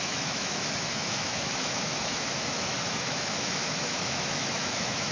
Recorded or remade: remade